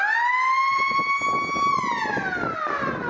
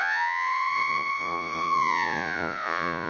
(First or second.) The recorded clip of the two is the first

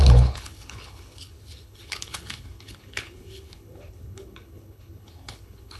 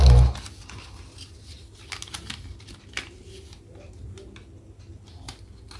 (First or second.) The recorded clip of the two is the second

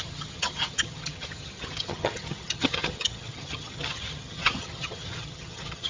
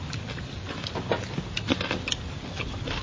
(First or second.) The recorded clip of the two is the second